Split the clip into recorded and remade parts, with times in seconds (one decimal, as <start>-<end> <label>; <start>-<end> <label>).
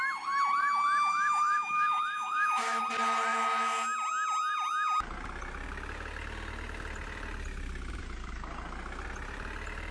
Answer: 0.0-0.6 recorded; 0.6-2.8 remade; 2.8-9.9 recorded